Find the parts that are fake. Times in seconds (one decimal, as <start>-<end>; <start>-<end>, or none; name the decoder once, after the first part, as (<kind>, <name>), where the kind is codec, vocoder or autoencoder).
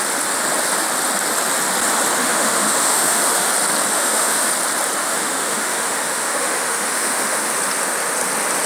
2.2-3.5 (autoencoder, DAC-VAE); 3.9-4.5; 5.0-7.5